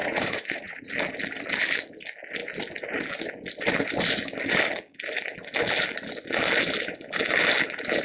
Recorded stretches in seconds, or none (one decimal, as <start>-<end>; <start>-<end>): 0.9-8.0